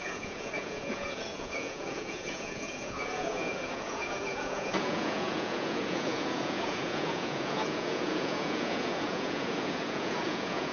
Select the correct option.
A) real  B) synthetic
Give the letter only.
B